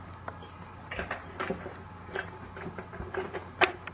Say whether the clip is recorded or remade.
recorded